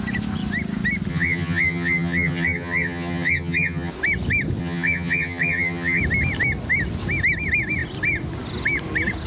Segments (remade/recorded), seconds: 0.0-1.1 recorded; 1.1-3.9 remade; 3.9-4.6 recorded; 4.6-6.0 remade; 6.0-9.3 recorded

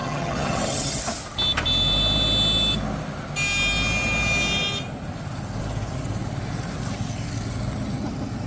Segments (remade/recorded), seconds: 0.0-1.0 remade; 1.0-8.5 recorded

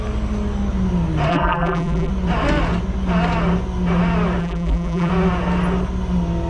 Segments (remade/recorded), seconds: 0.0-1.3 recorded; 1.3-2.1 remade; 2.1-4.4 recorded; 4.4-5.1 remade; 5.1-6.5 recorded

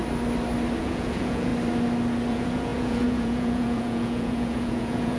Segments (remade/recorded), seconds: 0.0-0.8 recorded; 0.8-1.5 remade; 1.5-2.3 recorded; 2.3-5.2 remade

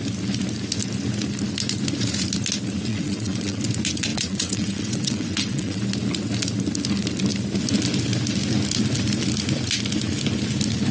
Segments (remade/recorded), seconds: 0.0-2.9 recorded; 2.9-3.6 remade; 3.6-4.1 recorded; 4.1-5.8 remade; 5.8-10.9 recorded

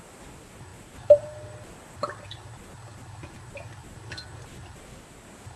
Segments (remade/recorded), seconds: 0.0-5.6 recorded